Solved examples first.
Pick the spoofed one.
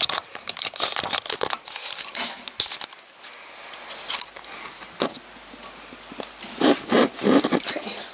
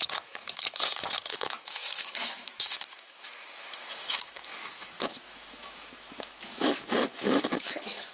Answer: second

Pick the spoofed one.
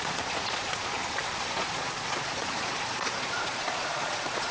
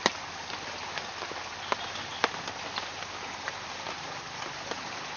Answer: first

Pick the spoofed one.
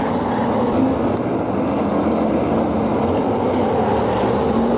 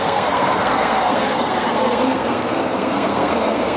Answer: second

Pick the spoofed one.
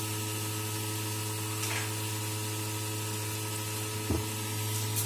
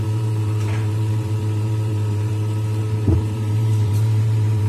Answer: second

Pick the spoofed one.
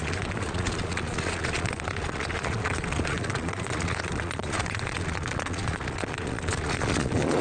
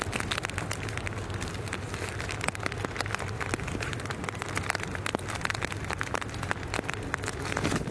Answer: first